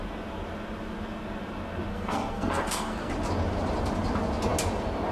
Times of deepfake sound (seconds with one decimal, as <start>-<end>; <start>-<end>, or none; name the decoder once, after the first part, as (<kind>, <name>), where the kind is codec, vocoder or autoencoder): 1.9-3.1 (codec, SNAC)